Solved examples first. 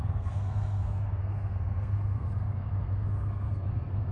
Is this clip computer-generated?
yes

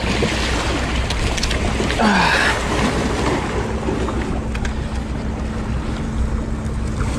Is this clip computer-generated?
no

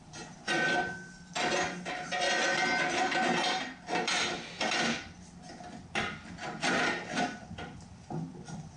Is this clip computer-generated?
no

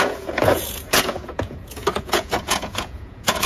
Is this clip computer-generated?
yes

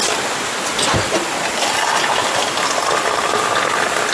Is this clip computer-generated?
no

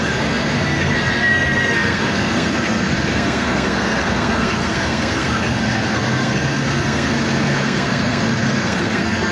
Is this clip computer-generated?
yes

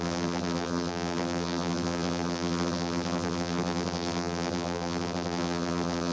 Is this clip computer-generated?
yes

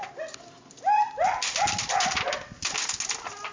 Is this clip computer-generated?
no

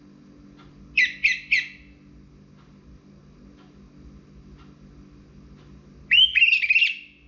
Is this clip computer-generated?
no